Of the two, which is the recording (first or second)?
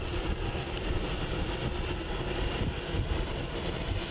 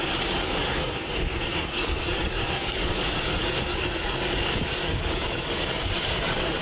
first